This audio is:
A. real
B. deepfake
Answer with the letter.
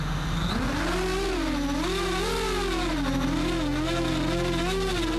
A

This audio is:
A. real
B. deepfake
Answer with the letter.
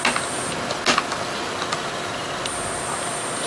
A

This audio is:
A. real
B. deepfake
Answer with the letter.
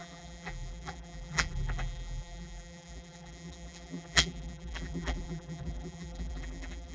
B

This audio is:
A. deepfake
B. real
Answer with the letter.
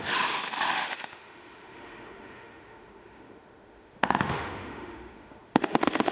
A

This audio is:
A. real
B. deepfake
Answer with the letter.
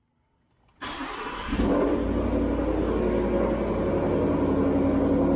A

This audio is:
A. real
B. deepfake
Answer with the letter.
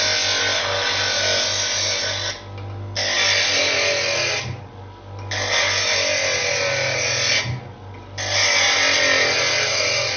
A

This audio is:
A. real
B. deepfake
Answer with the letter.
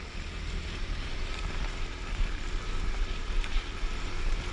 B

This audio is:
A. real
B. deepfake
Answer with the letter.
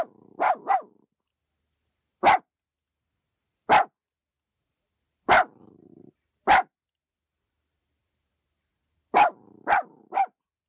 A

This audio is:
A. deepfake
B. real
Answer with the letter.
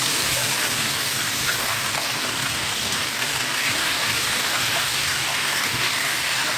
A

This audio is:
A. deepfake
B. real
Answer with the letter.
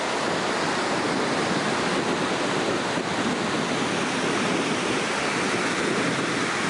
B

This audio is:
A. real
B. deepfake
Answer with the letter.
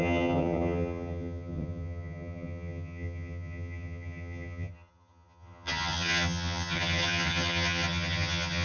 B